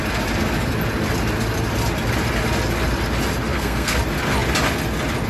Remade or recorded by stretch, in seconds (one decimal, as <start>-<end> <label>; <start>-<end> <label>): 0.0-3.5 recorded; 3.5-4.0 remade; 4.0-5.3 recorded